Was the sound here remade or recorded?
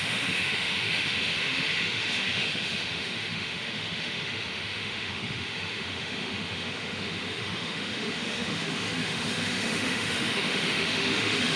remade